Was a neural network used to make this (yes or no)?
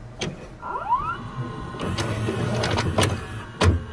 no